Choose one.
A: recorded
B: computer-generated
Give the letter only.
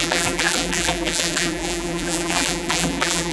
B